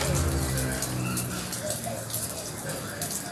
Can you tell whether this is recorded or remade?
recorded